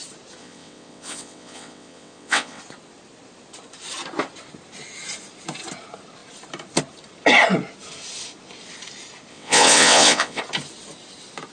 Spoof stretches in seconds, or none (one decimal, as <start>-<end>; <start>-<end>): 0.4-2.6; 9.3-10.4